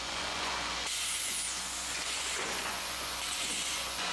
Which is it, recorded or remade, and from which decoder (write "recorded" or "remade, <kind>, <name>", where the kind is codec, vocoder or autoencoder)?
remade, vocoder, Vocos